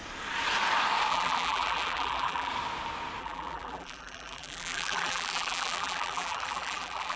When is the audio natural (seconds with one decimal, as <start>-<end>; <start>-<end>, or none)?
0.0-1.1; 2.5-3.2